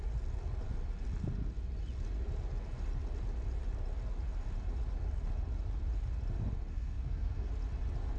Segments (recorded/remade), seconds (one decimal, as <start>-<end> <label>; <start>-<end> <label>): 0.0-6.7 recorded; 6.7-7.5 remade; 7.5-8.2 recorded